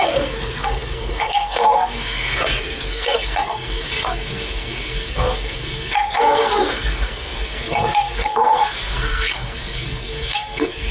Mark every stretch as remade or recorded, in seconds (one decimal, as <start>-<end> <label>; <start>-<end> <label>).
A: 0.0-10.9 remade